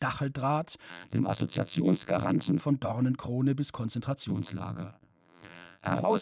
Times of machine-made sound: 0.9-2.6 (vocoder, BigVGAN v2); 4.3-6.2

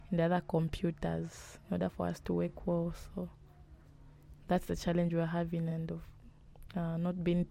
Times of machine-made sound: 5.7-6.7 (vocoder, BigVGAN v2)

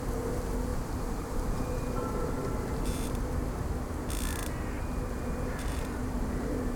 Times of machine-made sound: 0.7-3.6 (vocoder, BigVGAN v2); 4.4-6.8

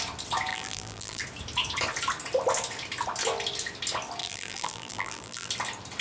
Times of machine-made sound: 0.5-1.2 (vocoder, BigVGAN v2); 4.2-5.5

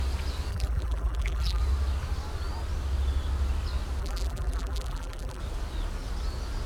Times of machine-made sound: 0.5-1.6 (vocoder, BigVGAN v2); 4.0-5.4

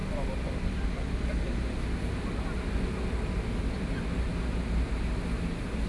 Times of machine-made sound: 4.3-5.1 (vocoder, BigVGAN v2)

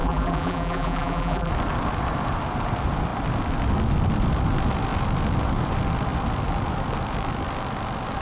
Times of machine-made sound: 0.0-1.5 (vocoder, BigVGAN v2)